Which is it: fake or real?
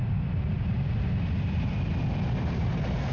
real